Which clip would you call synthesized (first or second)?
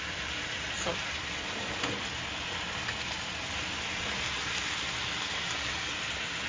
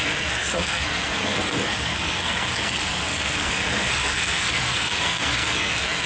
second